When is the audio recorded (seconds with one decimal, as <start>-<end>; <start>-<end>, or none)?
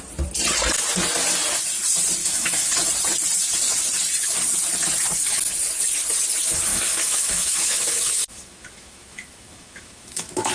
0.0-2.2; 2.7-6.7